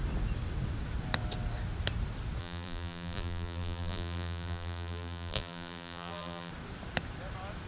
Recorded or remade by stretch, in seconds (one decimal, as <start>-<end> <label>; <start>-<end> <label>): 0.0-2.4 recorded; 2.4-6.5 remade; 6.5-7.7 recorded